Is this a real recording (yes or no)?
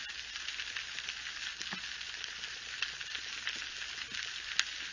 yes